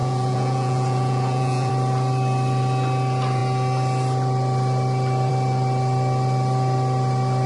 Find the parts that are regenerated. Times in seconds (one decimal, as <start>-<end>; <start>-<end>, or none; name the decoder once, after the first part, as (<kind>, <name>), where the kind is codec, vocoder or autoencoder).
0.0-1.7 (vocoder, Vocos)

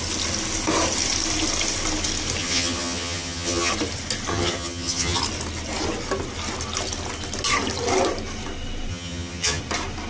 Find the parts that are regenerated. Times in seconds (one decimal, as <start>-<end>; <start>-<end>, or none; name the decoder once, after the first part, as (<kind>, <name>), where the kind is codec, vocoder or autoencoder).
2.4-3.7 (vocoder, HiFi-GAN); 4.3-5.2; 8.9-9.6

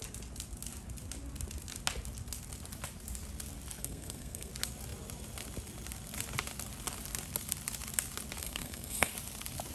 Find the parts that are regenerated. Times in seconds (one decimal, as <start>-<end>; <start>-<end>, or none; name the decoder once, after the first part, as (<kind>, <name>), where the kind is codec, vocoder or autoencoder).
3.8-4.5 (codec, SNAC); 8.4-9.1

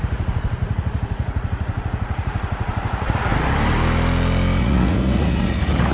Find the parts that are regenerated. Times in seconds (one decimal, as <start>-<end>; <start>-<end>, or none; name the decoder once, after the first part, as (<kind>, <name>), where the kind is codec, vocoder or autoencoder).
0.0-3.3 (vocoder, Vocos); 4.6-5.9

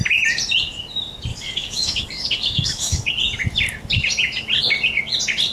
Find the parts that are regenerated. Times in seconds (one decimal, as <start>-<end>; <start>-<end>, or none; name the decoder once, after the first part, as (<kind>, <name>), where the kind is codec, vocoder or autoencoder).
1.3-3.1 (codec, DAC)

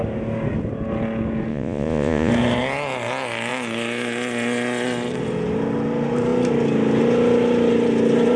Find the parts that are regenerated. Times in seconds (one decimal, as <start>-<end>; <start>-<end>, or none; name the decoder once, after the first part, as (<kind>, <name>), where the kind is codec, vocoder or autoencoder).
1.5-2.3 (vocoder, Vocos)

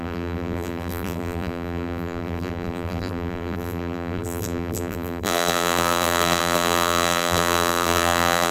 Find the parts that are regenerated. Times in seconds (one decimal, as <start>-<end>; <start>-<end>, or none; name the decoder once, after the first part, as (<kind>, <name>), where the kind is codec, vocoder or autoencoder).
0.0-8.5 (vocoder, BigVGAN v2)

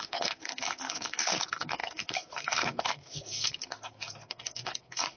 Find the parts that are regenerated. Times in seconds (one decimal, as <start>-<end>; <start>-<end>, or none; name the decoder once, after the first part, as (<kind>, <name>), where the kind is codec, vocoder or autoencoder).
0.0-5.2 (codec, SNAC)